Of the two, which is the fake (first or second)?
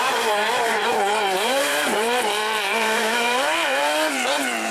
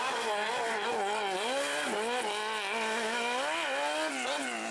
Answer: first